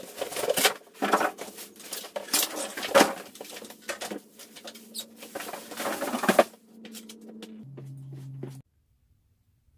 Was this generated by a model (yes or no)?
no